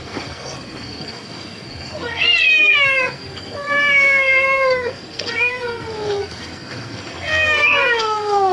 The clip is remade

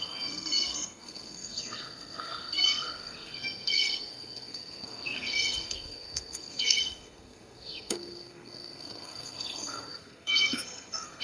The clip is remade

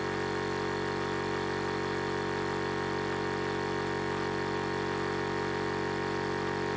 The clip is recorded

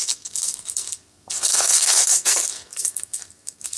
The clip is remade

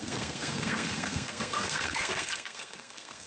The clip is remade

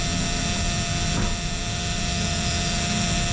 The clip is recorded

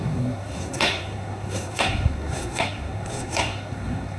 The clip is remade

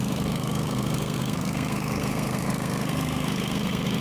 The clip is remade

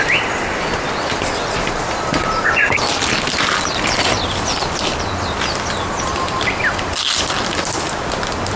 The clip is recorded